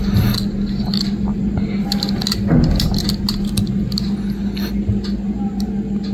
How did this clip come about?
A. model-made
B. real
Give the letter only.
B